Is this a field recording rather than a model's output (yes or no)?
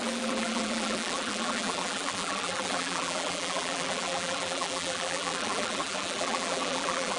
no